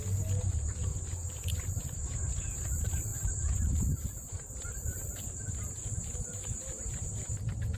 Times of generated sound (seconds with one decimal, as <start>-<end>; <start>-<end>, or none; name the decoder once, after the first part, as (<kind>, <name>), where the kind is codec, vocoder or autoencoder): 0.9-2.3 (vocoder, BigVGAN v2); 3.1-7.8